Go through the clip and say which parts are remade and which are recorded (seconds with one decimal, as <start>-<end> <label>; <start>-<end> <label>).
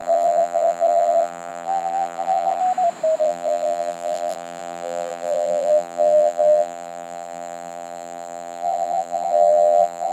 0.0-2.6 remade; 2.6-3.2 recorded; 3.2-10.1 remade